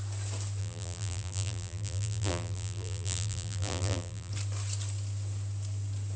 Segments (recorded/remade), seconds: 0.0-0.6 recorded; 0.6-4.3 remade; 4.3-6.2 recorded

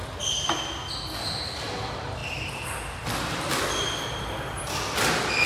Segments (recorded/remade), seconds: 0.0-5.5 recorded

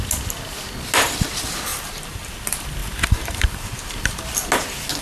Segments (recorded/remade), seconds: 0.0-1.7 recorded; 1.7-2.3 remade; 2.3-2.8 recorded; 2.8-4.0 remade; 4.0-5.0 recorded

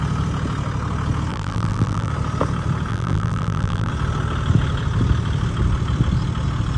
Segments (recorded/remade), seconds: 0.0-1.3 recorded; 1.3-2.1 remade; 2.1-2.9 recorded; 2.9-3.9 remade; 3.9-6.8 recorded

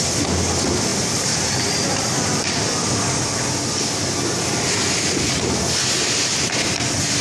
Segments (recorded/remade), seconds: 0.0-0.9 recorded; 0.9-3.4 remade; 3.4-7.2 recorded